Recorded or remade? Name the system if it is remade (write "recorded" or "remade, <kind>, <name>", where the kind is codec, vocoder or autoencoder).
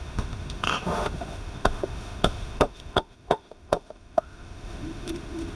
remade, autoencoder, DAC-VAE